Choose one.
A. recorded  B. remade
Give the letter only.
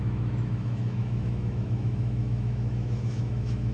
B